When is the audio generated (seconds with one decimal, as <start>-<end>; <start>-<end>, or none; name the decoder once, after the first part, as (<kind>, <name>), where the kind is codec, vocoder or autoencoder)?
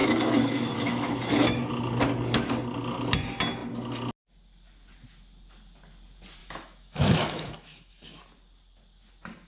0.0-1.7 (autoencoder, DAC-VAE); 6.4-8.2